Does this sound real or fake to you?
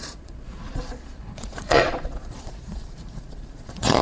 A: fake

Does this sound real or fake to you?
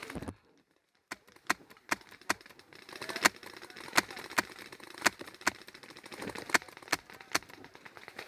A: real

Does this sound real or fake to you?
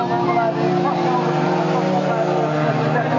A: real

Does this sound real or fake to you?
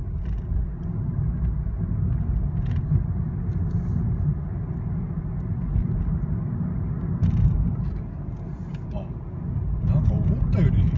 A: real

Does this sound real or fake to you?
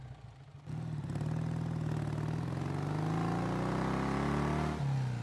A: real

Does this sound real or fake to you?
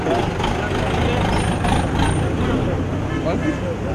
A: real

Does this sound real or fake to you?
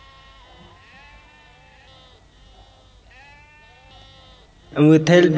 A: real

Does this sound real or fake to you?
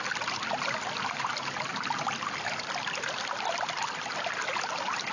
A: real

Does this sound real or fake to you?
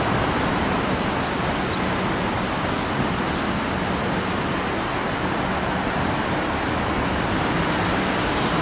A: real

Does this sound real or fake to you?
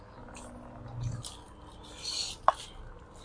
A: real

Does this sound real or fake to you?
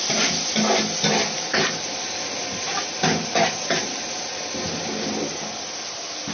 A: real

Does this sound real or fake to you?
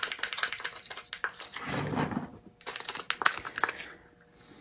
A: real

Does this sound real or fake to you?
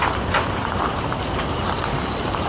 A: real